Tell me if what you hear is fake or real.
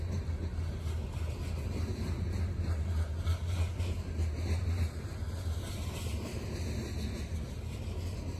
real